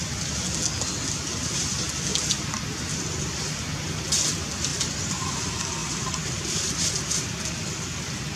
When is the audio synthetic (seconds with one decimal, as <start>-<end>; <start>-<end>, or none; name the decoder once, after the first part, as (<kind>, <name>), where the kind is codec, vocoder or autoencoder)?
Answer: 4.7-5.2 (vocoder, BigVGAN v2)